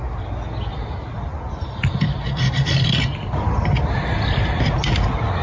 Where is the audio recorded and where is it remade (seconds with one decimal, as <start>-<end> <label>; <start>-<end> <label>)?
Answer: 0.0-5.4 recorded